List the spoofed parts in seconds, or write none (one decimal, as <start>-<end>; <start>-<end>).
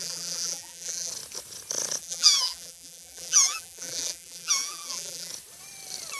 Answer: 0.0-1.1; 2.0-5.3